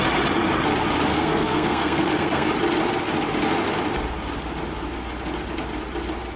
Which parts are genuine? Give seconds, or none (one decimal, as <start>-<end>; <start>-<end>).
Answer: 0.0-1.1; 2.5-6.4